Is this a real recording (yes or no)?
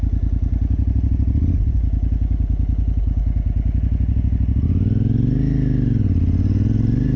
yes